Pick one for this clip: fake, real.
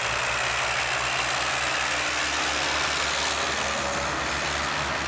real